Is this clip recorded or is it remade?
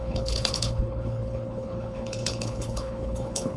remade